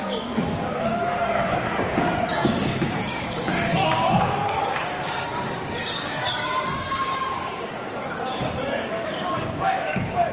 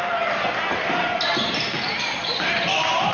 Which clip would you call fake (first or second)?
first